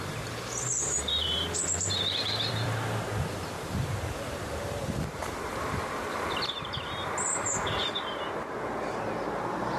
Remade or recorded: remade